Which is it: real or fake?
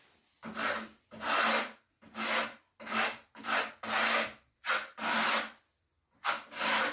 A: real